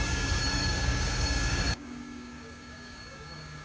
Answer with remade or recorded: remade